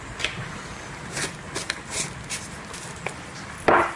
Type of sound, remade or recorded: recorded